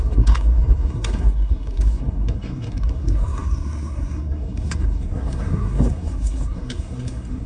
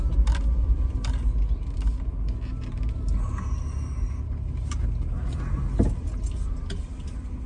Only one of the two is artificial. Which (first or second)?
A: first